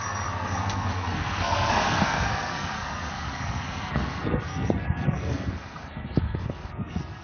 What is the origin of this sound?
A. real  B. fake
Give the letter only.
B